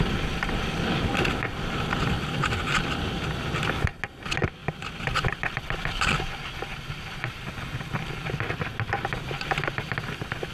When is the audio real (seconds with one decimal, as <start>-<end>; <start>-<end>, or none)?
0.0-10.5